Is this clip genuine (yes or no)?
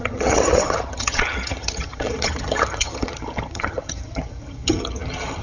no